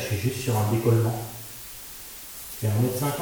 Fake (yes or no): no